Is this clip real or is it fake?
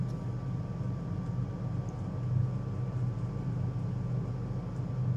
real